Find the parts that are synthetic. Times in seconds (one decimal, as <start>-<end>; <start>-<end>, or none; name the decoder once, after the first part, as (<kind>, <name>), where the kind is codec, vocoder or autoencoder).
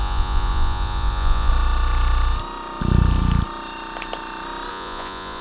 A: 0.0-1.5 (vocoder, Vocos); 4.7-5.4